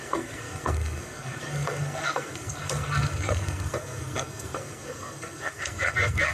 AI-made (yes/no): yes